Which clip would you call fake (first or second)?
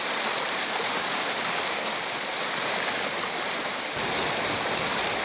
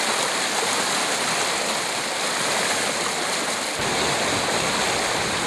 first